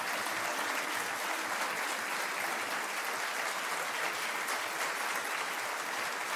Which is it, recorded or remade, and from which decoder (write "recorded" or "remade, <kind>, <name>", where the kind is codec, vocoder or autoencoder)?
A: recorded